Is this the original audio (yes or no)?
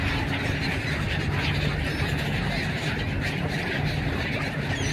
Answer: yes